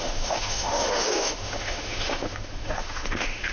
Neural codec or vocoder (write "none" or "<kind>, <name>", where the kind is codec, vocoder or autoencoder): autoencoder, DAC-VAE